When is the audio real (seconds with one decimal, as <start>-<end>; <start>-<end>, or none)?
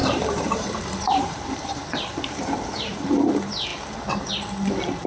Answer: 3.1-5.1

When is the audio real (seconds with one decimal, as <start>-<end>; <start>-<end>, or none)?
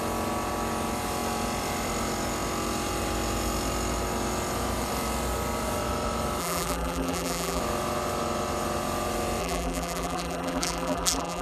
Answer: 0.0-6.4; 7.6-9.4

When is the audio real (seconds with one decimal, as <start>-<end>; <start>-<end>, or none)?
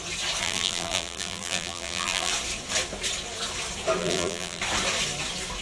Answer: 0.0-0.4; 2.3-4.0; 4.6-5.6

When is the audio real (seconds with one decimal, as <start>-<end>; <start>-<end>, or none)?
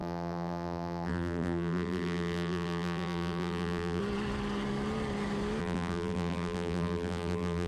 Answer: 4.0-5.6